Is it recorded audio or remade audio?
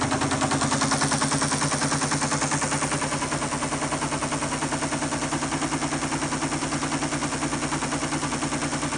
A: recorded